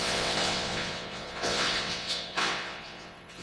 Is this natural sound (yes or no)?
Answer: no